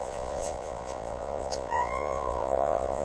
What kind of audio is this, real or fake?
fake